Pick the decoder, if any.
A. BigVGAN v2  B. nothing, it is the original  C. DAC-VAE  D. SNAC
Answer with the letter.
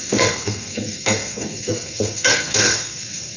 D